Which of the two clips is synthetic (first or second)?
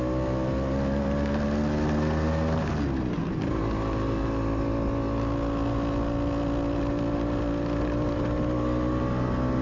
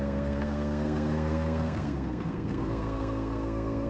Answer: second